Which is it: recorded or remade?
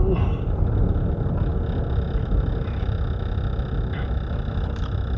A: recorded